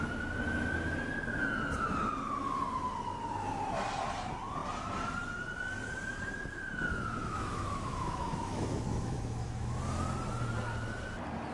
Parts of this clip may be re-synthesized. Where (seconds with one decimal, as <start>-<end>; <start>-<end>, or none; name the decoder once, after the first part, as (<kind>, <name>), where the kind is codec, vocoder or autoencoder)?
7.2-9.8 (autoencoder, DAC-VAE)